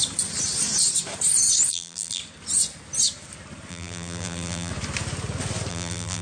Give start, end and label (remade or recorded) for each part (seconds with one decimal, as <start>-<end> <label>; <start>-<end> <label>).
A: 0.0-1.7 recorded; 1.7-2.2 remade; 2.2-3.7 recorded; 3.7-4.7 remade; 4.7-5.7 recorded; 5.7-6.2 remade